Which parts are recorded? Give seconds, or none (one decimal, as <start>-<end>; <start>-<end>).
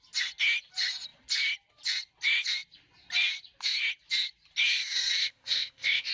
0.0-5.2